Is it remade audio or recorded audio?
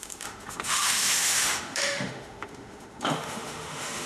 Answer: remade